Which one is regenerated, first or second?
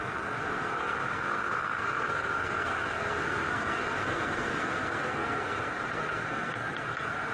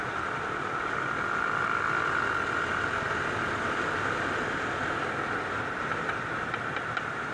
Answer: first